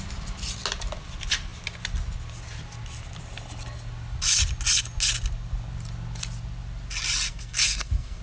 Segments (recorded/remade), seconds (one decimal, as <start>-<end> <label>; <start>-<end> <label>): 0.0-7.3 recorded; 7.3-8.2 remade

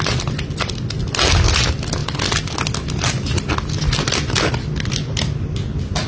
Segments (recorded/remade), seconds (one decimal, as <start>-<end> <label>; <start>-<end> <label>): 0.0-6.1 recorded